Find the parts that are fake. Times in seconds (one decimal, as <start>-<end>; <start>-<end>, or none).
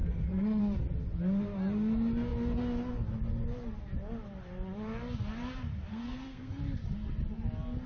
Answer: 0.0-0.6; 5.9-6.6